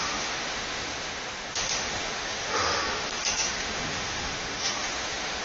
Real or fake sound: fake